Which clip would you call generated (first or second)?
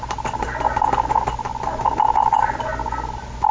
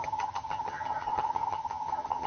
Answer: second